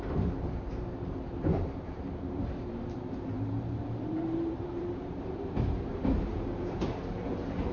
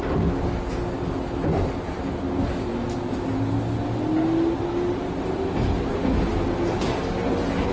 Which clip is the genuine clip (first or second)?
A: second